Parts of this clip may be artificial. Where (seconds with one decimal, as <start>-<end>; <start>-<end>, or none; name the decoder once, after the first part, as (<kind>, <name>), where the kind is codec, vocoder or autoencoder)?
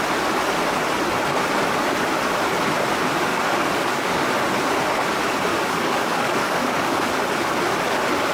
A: 3.3-4.3 (codec, DAC); 5.5-7.1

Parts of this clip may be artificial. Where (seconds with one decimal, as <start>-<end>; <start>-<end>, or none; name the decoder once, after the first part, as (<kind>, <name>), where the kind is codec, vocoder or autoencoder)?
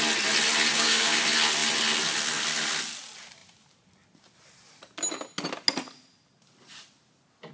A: 0.7-1.2 (codec, DAC)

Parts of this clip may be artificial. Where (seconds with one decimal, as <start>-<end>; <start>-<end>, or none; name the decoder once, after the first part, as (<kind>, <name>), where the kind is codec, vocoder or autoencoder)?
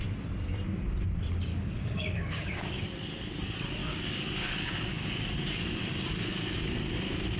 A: 1.5-2.8 (codec, DAC); 3.8-5.3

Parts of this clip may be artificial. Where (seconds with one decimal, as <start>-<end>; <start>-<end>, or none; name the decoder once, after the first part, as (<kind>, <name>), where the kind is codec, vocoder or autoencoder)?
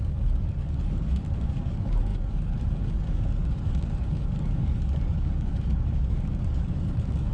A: 0.0-7.3 (codec, DAC)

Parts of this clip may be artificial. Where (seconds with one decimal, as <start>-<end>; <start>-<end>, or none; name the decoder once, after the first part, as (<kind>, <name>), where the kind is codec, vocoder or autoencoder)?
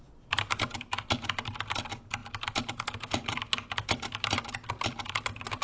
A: none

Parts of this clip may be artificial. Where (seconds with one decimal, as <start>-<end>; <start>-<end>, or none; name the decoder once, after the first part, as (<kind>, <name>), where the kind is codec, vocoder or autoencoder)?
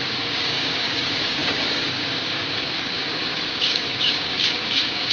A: 0.0-5.1 (codec, DAC)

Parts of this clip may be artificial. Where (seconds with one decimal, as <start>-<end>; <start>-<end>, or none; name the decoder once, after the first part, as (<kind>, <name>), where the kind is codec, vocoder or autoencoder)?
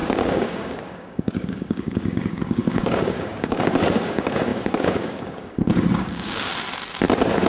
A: 0.0-6.5 (codec, DAC)